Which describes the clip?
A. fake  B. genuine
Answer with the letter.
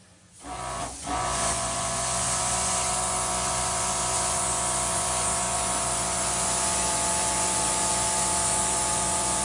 A